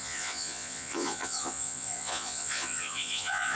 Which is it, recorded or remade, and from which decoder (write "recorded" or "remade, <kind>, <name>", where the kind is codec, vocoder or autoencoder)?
remade, vocoder, Vocos